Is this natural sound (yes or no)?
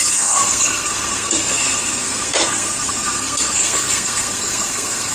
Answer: no